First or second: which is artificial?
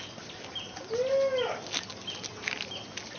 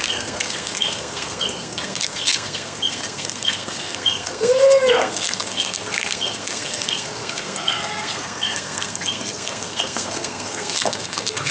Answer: second